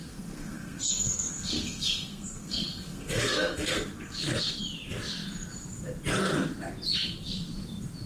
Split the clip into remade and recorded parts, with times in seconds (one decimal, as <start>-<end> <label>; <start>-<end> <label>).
0.0-4.6 remade; 4.6-8.1 recorded

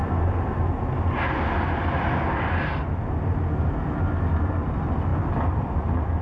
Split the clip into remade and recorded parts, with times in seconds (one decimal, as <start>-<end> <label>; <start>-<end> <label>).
0.0-5.1 recorded; 5.1-6.2 remade